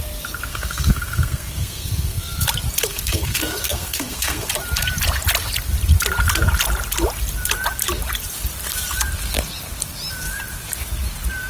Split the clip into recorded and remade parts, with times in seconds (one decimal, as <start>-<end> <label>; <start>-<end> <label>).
0.0-0.5 recorded; 0.5-2.4 remade; 2.4-2.9 recorded; 2.9-4.5 remade; 4.5-11.5 recorded